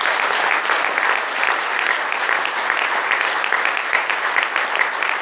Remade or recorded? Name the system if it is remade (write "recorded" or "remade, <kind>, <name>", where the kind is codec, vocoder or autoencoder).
recorded